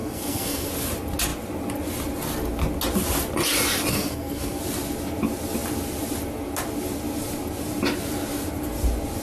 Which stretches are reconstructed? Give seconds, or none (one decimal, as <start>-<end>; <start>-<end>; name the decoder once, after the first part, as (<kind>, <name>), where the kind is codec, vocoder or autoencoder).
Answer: 0.0-0.7 (codec, SNAC); 3.9-4.6